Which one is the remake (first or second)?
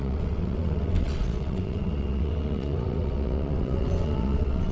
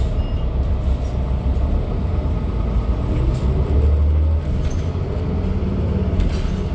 first